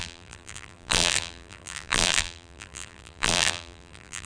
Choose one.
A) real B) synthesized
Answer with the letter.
B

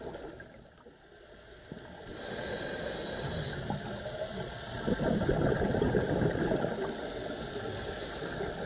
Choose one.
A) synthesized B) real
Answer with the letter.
B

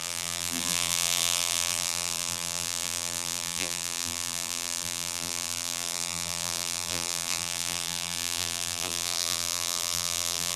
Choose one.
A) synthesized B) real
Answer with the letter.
A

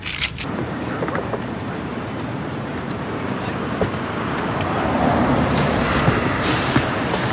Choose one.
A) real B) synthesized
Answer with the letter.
B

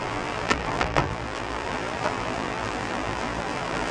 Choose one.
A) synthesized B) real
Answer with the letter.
A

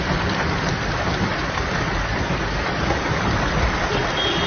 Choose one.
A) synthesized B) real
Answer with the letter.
A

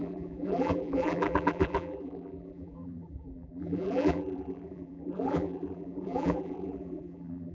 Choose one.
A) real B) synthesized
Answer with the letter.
B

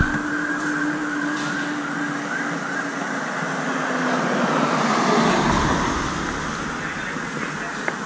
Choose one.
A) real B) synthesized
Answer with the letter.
A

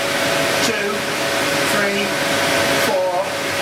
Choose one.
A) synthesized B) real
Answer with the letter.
B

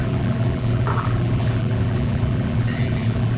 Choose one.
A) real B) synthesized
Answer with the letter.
B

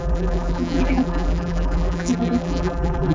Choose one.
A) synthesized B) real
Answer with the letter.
A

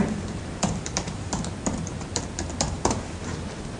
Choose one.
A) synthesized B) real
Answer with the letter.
A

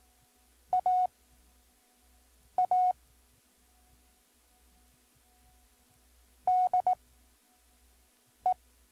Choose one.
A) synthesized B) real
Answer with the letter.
B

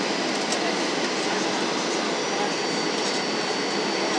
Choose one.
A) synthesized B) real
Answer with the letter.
B